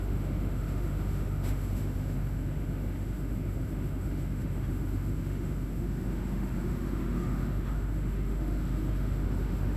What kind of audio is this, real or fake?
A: fake